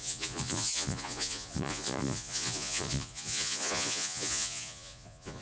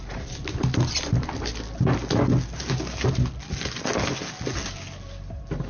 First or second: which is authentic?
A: second